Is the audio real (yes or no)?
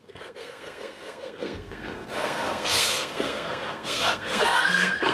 no